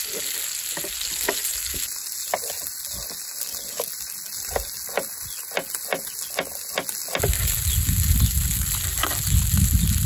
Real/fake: real